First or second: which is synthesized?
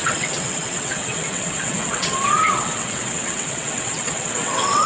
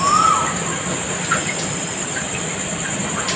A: first